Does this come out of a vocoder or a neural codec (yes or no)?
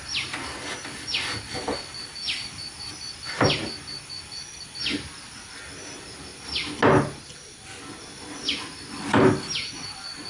no